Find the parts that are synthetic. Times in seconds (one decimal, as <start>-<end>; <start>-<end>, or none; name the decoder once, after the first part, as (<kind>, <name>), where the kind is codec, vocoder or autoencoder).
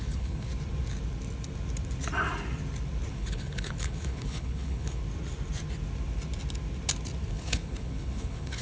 0.0-0.5 (codec, HILCodec); 3.1-5.0; 7.3-8.6